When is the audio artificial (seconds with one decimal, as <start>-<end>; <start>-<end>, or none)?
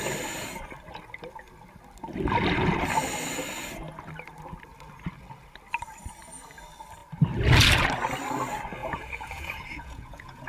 8.8-10.5